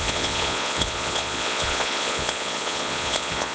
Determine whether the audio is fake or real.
fake